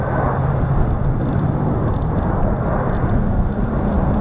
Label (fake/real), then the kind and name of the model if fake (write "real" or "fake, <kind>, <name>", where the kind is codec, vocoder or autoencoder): real